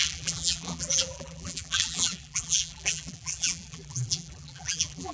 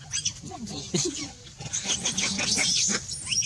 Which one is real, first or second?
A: second